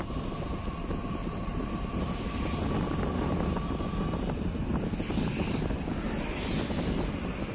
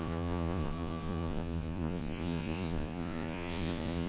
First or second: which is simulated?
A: second